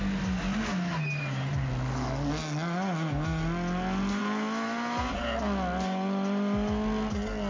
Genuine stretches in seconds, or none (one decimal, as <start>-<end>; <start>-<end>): 0.0-7.5